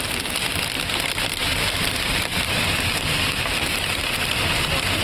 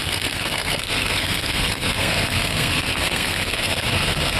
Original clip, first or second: first